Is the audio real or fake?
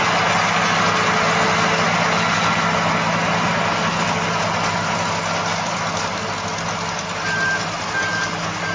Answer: real